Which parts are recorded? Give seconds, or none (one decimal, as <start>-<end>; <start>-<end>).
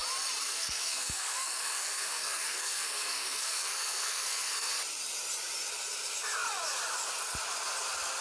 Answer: 0.0-0.4; 4.7-8.2